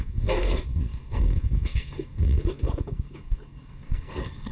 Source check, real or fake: fake